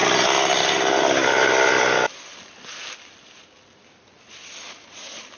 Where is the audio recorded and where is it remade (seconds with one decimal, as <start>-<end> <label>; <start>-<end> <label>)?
0.0-5.4 recorded